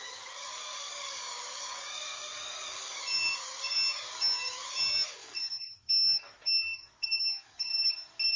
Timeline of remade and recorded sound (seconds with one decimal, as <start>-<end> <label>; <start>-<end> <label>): 0.0-7.7 remade; 7.7-8.4 recorded